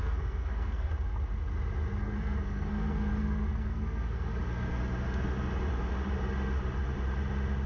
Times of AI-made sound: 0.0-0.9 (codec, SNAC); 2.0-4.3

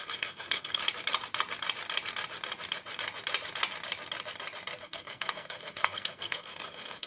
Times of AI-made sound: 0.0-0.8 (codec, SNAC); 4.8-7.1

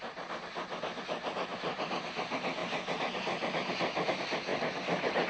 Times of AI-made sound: none

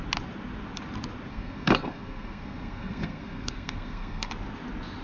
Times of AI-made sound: 1.3-4.3 (codec, SNAC)

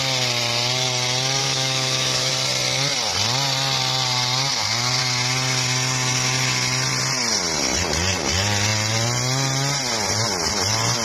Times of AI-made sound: 1.4-2.3 (autoencoder, DAC-VAE)